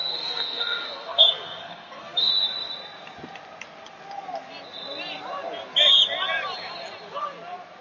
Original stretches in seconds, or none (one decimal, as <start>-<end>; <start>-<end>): 2.3-7.8